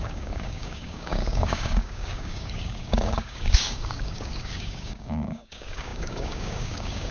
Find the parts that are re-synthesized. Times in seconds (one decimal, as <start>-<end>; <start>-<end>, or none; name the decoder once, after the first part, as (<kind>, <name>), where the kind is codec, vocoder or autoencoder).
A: 0.0-7.1 (codec, DAC)